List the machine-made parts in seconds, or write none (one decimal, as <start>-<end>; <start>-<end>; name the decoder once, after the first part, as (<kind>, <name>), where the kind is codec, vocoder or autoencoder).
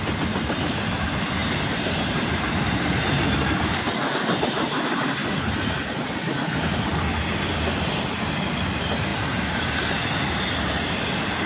1.4-2.9 (vocoder, BigVGAN v2); 9.1-9.7